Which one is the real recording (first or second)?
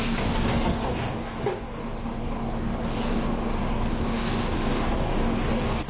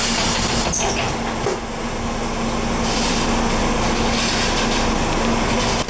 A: second